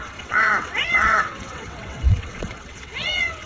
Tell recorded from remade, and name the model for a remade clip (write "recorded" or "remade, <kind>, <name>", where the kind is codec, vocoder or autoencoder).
remade, vocoder, WaveNeXt